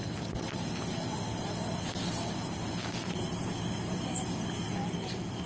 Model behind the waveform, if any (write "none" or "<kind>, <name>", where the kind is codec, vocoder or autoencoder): none